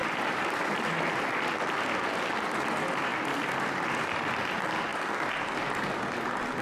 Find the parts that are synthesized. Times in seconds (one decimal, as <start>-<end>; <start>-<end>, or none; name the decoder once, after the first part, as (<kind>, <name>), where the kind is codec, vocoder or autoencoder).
0.0-0.7 (vocoder, BigVGAN v2)

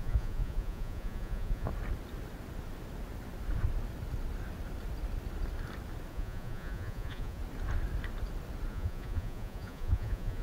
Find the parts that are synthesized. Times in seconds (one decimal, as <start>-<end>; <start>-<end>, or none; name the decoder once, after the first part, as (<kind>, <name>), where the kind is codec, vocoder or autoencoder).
0.0-1.7 (vocoder, Vocos); 6.1-7.4; 8.7-10.4

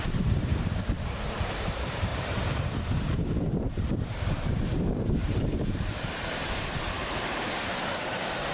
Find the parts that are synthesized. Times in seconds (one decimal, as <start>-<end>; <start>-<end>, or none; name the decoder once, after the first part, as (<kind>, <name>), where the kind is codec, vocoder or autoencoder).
0.0-8.5 (vocoder, BigVGAN v2)